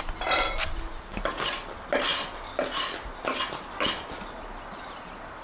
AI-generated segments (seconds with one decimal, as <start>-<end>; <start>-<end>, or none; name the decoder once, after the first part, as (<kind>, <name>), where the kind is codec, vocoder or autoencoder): none